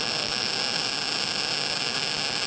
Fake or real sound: real